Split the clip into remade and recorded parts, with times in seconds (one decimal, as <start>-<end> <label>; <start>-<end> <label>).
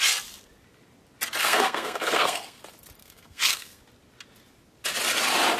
0.0-1.4 recorded; 1.4-2.6 remade; 2.6-3.0 recorded; 3.0-3.8 remade; 3.8-5.6 recorded